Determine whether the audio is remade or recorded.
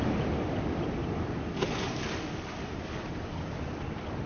recorded